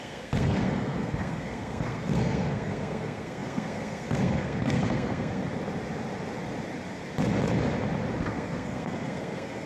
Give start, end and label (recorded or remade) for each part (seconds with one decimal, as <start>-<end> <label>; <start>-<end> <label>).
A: 0.0-5.4 remade; 5.4-8.2 recorded; 8.2-9.7 remade